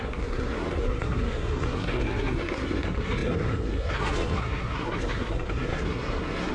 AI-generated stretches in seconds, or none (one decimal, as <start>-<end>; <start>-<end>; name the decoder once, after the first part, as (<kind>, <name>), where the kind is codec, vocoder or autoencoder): 0.0-6.5 (codec, SNAC)